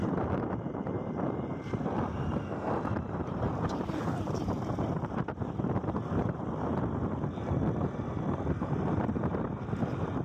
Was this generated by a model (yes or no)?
yes